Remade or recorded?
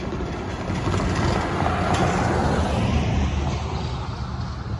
recorded